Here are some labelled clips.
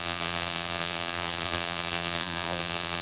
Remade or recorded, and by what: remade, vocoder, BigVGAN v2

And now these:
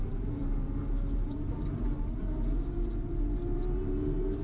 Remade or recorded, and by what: remade, vocoder, BigVGAN v2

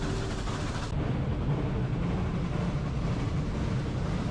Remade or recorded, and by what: recorded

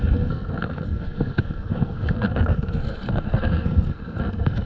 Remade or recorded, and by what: remade, codec, SNAC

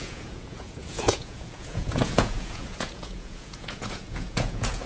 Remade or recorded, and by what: remade, vocoder, Vocos